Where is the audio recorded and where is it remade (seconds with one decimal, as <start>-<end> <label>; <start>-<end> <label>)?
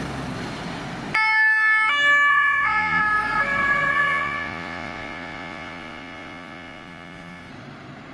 0.0-2.3 recorded; 2.3-3.0 remade; 3.0-3.9 recorded; 3.9-7.5 remade; 7.5-8.1 recorded